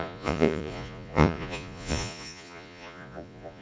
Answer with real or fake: fake